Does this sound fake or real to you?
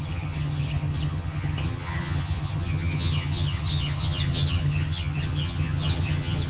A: fake